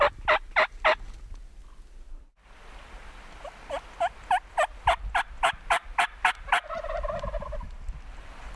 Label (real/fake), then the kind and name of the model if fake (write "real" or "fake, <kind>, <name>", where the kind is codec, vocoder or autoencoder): real